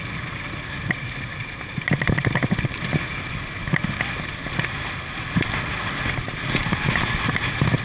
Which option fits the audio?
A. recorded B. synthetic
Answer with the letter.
A